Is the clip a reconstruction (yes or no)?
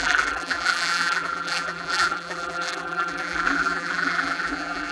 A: yes